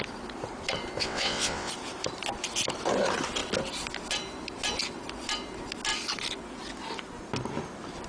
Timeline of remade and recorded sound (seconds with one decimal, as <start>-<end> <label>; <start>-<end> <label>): 0.0-1.0 recorded; 1.0-1.7 remade; 1.7-8.1 recorded